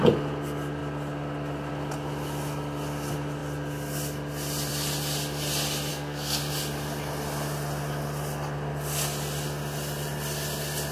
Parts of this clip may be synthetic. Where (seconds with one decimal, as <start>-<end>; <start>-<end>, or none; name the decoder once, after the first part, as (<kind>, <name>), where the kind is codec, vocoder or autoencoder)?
5.9-6.4 (codec, SNAC)